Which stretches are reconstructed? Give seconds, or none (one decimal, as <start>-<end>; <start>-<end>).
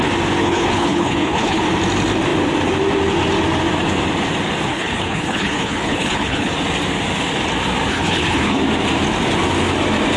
0.4-1.6; 4.7-6.5; 7.9-8.6